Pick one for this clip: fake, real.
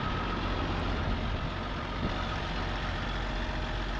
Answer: real